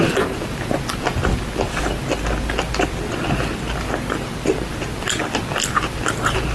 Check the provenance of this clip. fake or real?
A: real